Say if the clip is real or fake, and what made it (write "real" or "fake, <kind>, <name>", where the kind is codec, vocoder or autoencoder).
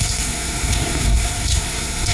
fake, codec, SNAC